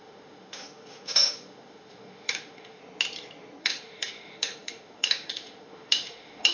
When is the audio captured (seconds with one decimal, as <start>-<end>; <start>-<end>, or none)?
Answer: 2.8-3.6